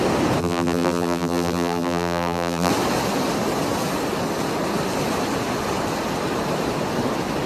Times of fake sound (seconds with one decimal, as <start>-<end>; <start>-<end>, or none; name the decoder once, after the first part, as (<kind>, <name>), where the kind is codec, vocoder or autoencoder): 0.4-2.7 (vocoder, BigVGAN v2)